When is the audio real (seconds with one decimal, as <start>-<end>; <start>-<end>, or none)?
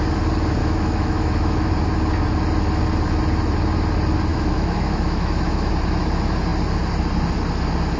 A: 0.0-0.6; 1.7-4.3; 5.7-8.0